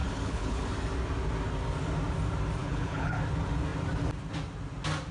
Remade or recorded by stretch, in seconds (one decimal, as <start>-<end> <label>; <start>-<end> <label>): 0.0-0.7 remade; 0.7-2.6 recorded; 2.6-3.2 remade; 3.2-5.1 recorded

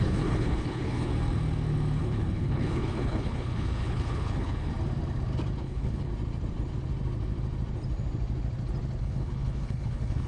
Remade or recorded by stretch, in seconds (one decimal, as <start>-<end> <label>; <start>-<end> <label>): 0.0-1.1 remade; 1.1-2.0 recorded; 2.0-4.7 remade; 4.7-5.6 recorded; 5.6-6.1 remade; 6.1-9.0 recorded; 9.0-10.3 remade

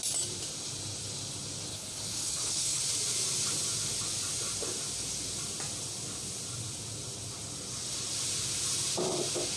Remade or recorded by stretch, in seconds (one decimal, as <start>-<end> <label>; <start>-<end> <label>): 0.0-1.7 recorded; 1.7-2.8 remade; 2.8-9.6 recorded

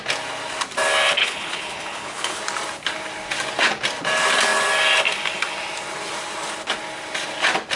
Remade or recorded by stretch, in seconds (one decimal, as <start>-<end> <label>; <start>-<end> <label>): 0.0-1.2 recorded; 1.2-2.4 remade; 2.4-7.8 recorded